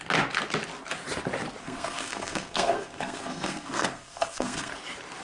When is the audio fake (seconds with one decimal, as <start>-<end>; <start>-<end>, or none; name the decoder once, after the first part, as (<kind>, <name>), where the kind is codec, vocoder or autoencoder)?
1.6-4.7 (codec, SNAC)